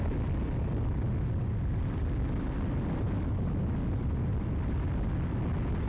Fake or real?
real